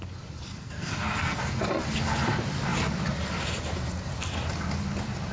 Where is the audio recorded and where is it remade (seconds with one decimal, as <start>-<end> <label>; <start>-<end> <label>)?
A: 0.0-0.6 recorded; 0.6-1.4 remade; 1.4-5.3 recorded